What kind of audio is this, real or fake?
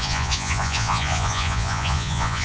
fake